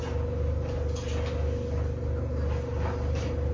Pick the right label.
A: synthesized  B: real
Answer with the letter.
B